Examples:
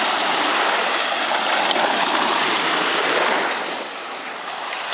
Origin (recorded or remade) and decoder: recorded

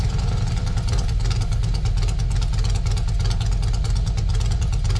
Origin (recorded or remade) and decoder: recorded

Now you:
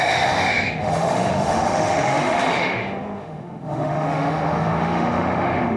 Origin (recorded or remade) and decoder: remade, autoencoder, DAC-VAE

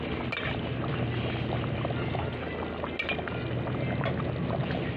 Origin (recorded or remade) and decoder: recorded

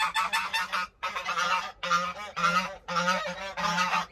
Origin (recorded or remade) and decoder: recorded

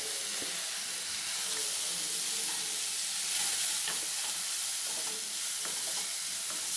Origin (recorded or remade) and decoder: recorded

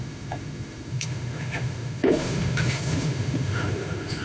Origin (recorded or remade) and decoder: remade, autoencoder, DAC-VAE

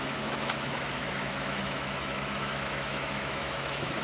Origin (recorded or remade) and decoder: remade, autoencoder, DAC-VAE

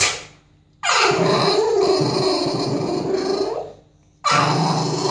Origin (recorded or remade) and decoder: recorded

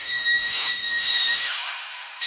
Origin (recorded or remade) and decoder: remade, autoencoder, DAC-VAE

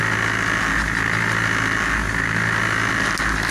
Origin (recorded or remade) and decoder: recorded